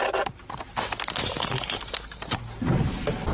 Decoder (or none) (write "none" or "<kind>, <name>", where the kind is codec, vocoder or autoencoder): none